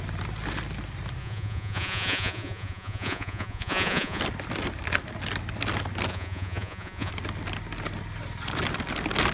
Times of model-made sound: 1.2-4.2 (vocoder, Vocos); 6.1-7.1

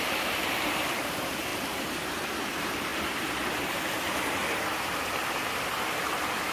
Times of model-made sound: 0.0-4.4 (vocoder, BigVGAN v2); 5.0-6.5

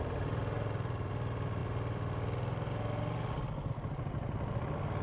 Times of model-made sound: none

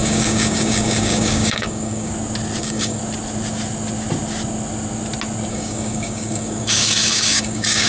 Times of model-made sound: 0.0-2.1 (codec, DAC); 2.6-3.0; 5.5-7.9

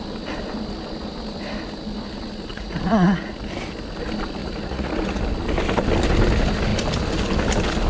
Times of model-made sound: 2.5-3.3 (vocoder, Vocos); 4.4-5.2

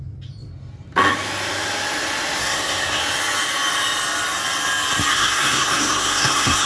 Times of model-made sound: 2.4-3.0 (codec, SNAC); 5.1-6.7

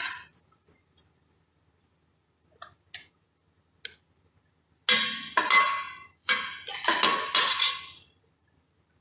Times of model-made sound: 0.0-0.6 (vocoder, BigVGAN v2); 5.9-6.5; 7.3-9.0